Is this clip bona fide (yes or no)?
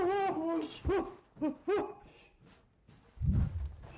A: yes